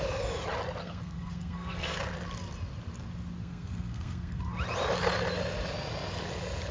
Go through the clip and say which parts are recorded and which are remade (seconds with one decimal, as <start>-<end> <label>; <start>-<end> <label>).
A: 0.0-0.8 recorded; 0.8-2.0 remade; 2.0-3.4 recorded; 3.4-4.4 remade; 4.4-6.7 recorded